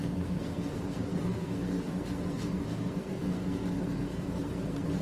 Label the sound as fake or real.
fake